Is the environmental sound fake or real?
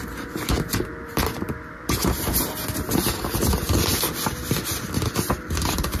real